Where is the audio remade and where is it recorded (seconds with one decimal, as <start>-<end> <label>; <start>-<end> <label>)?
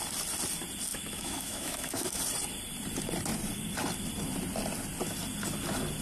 0.0-0.9 recorded; 0.9-2.2 remade; 2.2-6.0 recorded